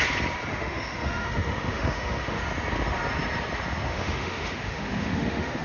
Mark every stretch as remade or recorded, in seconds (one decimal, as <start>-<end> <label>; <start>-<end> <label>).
0.0-0.5 recorded; 0.5-2.4 remade; 2.4-3.9 recorded; 3.9-5.6 remade